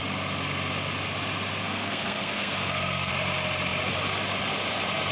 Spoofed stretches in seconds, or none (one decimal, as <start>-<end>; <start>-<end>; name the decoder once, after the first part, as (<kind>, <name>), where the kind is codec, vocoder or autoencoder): 1.6-3.1 (codec, SNAC)